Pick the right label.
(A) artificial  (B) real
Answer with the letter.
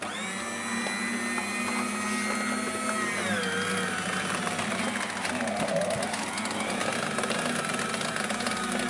B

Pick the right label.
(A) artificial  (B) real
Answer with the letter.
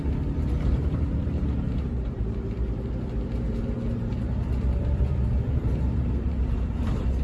A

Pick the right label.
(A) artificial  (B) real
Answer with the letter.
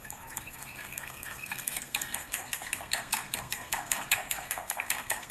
A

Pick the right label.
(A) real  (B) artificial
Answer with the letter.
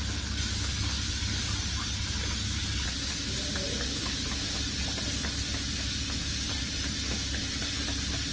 A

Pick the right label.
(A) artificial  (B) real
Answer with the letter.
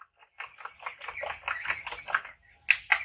B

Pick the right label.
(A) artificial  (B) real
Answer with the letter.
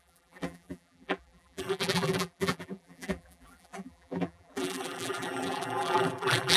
A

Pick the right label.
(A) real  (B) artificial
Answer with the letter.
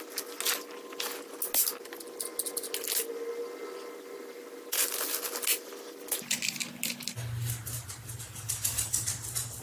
A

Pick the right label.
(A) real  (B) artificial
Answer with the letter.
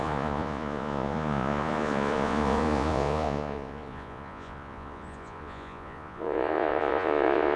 B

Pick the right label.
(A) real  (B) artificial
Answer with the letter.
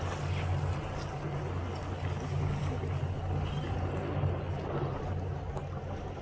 A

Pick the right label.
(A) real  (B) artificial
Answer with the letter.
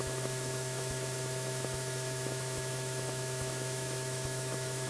B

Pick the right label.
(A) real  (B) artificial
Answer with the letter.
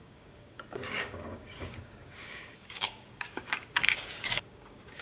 B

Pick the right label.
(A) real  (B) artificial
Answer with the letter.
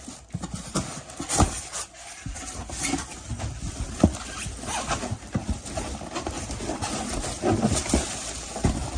A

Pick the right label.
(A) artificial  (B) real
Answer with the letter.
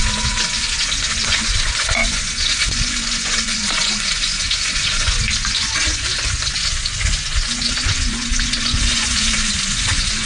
A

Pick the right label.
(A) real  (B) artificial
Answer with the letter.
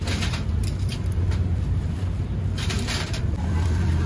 B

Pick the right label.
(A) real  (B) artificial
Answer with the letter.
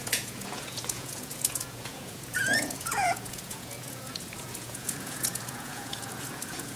B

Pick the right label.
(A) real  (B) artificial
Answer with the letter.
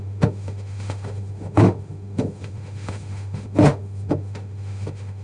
B